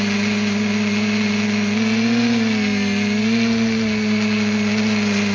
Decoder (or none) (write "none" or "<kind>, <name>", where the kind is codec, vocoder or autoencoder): none